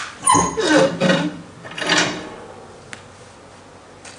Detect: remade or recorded recorded